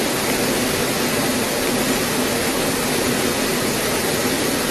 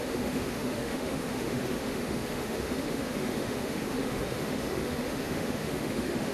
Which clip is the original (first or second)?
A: first